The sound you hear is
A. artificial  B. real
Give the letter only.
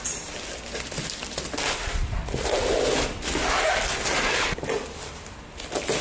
B